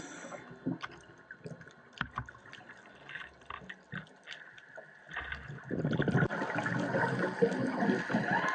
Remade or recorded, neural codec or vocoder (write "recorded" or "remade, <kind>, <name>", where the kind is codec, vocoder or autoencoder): recorded